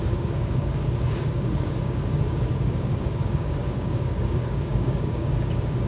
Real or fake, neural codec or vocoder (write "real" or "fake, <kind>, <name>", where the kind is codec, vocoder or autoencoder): fake, codec, DAC